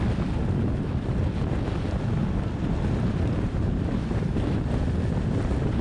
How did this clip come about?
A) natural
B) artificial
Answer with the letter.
A